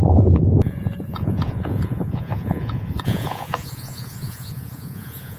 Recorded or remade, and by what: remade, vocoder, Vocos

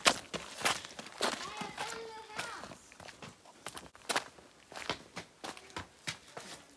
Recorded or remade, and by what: recorded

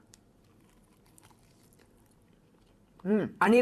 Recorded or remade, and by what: remade, vocoder, BigVGAN v2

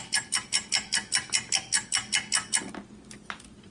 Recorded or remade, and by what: recorded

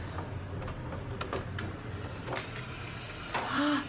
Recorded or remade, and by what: recorded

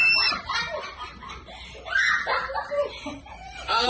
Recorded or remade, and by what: remade, vocoder, BigVGAN v2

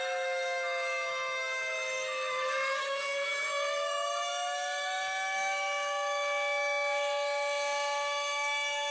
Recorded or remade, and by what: remade, autoencoder, DAC-VAE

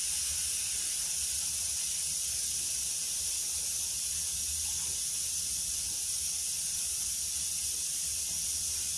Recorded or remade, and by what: recorded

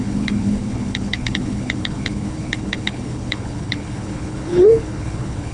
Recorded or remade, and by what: remade, codec, HILCodec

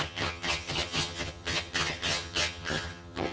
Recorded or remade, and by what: remade, vocoder, HiFi-GAN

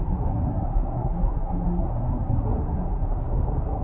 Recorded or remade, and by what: remade, codec, SNAC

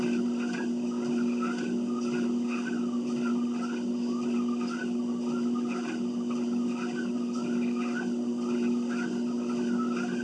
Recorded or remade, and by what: recorded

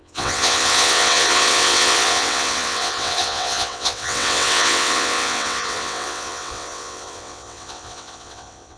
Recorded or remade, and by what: remade, vocoder, WaveNeXt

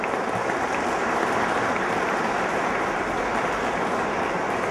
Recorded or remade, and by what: remade, vocoder, BigVGAN v2